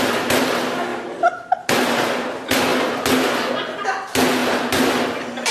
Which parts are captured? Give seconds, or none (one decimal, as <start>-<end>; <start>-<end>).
0.0-0.9; 1.7-5.5